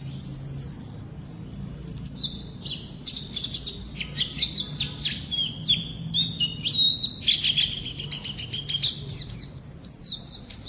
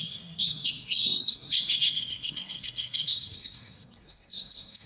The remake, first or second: second